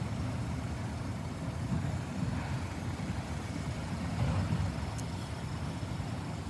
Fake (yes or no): no